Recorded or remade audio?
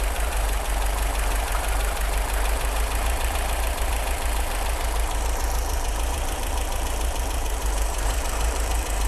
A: remade